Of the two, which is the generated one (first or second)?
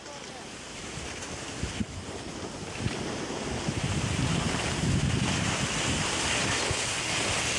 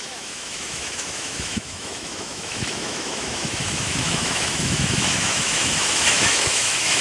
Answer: second